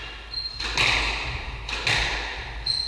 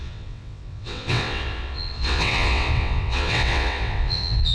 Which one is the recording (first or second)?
first